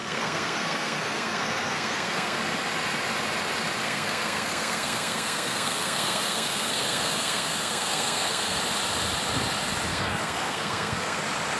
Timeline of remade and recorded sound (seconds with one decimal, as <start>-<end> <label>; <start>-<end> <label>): 0.0-2.4 remade; 2.4-3.8 recorded; 3.8-8.6 remade; 8.6-9.9 recorded; 9.9-11.2 remade; 11.2-11.6 recorded